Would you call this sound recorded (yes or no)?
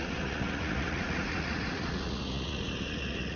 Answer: no